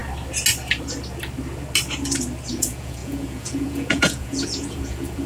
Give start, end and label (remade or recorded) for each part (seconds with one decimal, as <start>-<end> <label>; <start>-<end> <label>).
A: 0.0-2.5 recorded; 2.5-5.3 remade